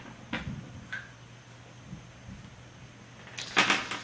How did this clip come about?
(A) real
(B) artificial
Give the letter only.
A